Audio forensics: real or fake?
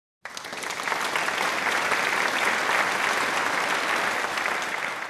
real